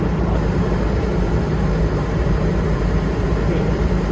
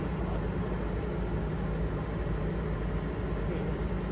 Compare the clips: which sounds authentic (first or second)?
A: second